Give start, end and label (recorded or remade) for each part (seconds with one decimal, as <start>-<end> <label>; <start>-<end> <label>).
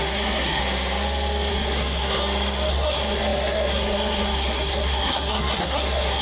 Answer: 0.0-0.6 remade; 0.6-1.5 recorded; 1.5-2.2 remade; 2.2-2.7 recorded; 2.7-6.2 remade